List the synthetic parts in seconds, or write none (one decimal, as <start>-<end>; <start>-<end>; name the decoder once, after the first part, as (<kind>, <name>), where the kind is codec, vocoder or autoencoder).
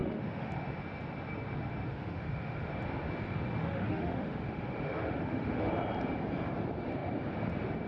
0.0-0.5 (autoencoder, DAC-VAE); 1.9-2.7; 3.6-5.7